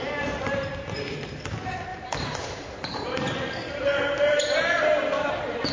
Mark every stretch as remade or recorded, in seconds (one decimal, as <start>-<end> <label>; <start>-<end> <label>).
0.0-1.9 recorded; 1.9-5.3 remade; 5.3-5.7 recorded